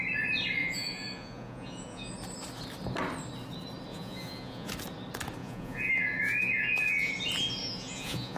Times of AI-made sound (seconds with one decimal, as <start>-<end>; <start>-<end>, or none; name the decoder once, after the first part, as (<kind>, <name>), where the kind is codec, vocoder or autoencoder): 0.6-2.1 (vocoder, Vocos); 3.9-4.7; 5.4-7.1; 7.6-8.4